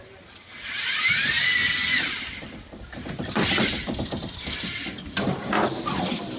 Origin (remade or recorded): recorded